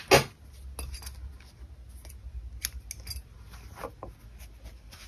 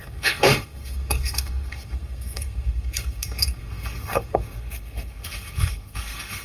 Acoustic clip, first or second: first